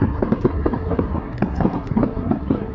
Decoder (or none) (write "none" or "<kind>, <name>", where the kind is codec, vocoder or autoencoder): codec, SNAC